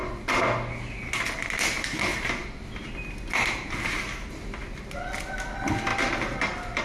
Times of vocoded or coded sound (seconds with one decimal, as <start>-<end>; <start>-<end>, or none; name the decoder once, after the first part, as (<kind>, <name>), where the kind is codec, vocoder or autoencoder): none